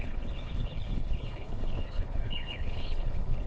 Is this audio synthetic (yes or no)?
yes